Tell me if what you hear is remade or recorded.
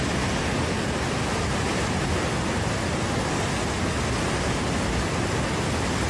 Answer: recorded